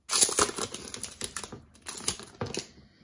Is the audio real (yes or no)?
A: yes